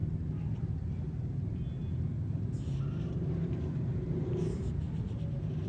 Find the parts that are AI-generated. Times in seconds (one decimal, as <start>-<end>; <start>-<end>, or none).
none